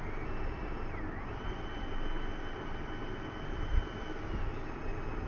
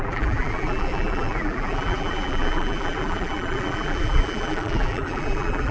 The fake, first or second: second